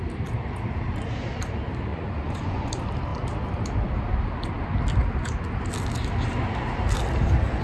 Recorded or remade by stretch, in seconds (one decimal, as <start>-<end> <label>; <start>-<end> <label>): 0.0-1.9 recorded; 1.9-2.7 remade; 2.7-7.6 recorded